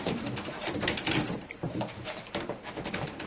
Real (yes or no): no